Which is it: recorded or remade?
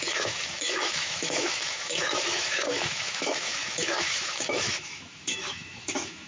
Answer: remade